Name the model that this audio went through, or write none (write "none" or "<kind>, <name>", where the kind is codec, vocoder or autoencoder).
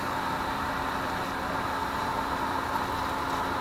none